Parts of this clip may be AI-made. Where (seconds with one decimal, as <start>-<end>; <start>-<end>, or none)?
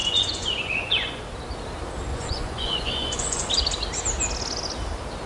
0.0-1.2; 2.1-3.5